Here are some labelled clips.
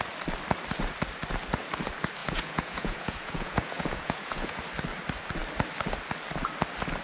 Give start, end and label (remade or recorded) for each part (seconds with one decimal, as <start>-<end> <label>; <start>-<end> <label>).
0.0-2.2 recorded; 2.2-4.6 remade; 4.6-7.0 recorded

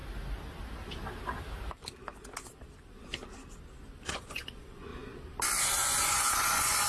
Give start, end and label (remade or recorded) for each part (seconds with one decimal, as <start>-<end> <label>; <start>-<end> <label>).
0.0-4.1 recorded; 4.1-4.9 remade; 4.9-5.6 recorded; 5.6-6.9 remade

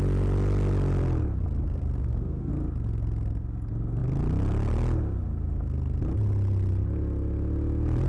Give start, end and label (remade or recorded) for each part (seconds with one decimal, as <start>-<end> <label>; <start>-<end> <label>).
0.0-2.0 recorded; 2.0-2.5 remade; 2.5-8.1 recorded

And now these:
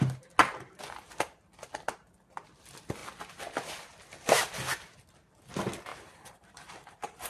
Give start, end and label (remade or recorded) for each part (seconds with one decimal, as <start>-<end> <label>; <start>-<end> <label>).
0.0-5.9 recorded; 5.9-7.3 remade

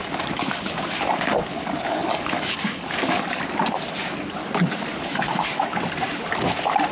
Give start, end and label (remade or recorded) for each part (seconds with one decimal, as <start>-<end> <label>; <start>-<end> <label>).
0.0-3.4 remade; 3.4-4.4 recorded; 4.4-5.8 remade; 5.8-6.9 recorded